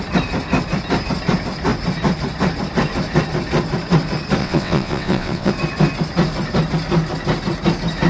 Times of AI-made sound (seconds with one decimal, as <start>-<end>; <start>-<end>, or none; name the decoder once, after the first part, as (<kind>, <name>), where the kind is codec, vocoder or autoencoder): 4.4-5.5 (vocoder, WaveNeXt)